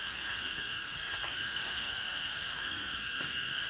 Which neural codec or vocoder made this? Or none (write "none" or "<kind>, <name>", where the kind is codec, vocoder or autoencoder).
codec, SNAC